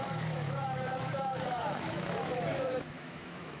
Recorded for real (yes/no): no